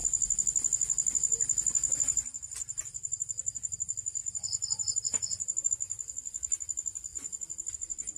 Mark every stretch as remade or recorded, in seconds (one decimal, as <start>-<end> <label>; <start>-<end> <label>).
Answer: 0.0-4.2 recorded; 4.2-5.7 remade; 5.7-7.1 recorded; 7.1-7.7 remade; 7.7-8.2 recorded